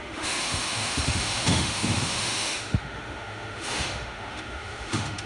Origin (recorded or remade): remade